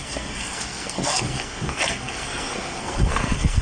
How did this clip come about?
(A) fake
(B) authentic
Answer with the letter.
A